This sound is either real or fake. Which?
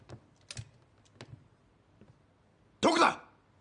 real